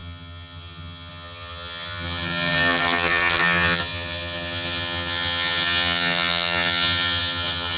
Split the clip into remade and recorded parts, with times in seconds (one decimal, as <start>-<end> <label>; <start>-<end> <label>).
0.0-7.8 remade